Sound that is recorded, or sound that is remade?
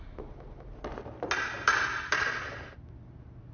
recorded